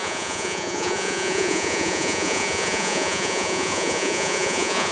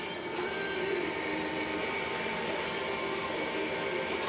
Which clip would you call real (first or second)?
second